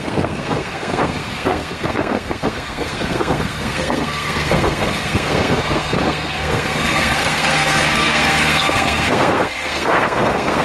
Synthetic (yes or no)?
yes